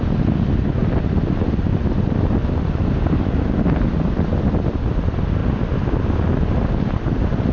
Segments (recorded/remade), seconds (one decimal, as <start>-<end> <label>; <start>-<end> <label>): 0.0-5.4 remade; 5.4-6.7 recorded; 6.7-7.5 remade